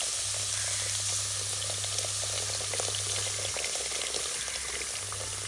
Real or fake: real